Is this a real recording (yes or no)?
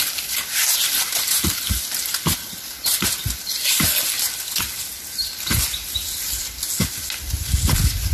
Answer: yes